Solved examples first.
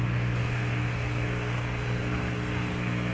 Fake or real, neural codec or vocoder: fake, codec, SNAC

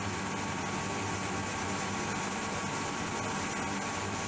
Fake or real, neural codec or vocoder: real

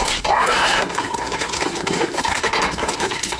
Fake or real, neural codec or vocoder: fake, codec, SNAC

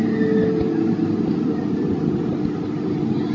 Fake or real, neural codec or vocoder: real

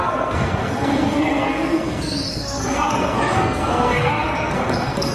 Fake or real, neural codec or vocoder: fake, codec, SNAC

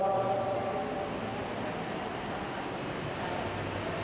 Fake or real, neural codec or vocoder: real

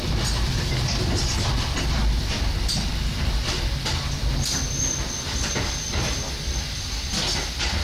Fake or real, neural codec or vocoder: real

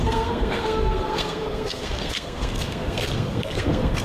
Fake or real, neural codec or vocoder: fake, codec, SNAC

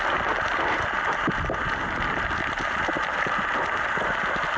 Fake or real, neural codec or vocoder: real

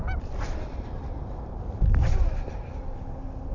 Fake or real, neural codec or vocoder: real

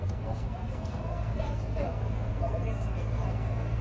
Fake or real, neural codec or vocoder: fake, codec, SNAC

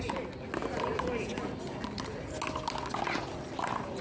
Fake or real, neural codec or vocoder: real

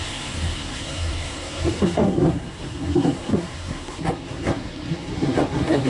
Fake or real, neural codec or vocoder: fake, codec, SNAC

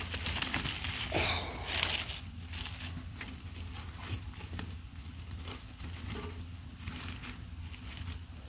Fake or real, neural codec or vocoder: real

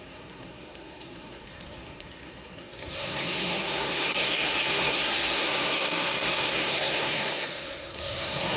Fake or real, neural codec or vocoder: fake, codec, SNAC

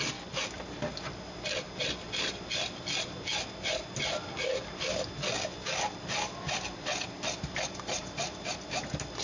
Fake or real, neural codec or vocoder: real